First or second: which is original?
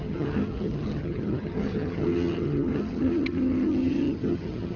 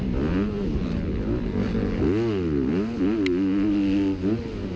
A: second